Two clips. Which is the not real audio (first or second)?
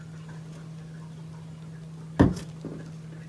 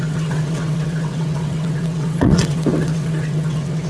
second